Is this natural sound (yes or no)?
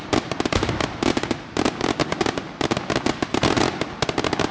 yes